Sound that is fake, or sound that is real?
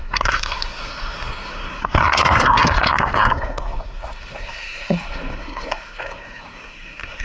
fake